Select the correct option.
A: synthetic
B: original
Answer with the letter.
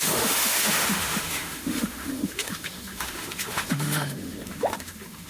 A